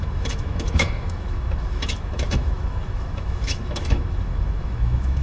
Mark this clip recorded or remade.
remade